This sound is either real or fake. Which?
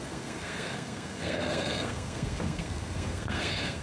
fake